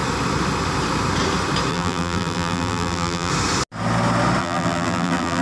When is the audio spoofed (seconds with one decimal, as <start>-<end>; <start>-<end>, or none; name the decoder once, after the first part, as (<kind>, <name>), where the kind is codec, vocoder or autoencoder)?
1.7-3.3 (vocoder, BigVGAN v2); 4.4-5.4